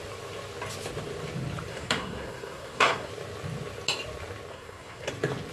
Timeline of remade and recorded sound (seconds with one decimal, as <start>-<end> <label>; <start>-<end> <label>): 0.0-1.7 recorded; 1.7-3.1 remade; 3.1-4.5 recorded; 4.5-5.1 remade; 5.1-5.5 recorded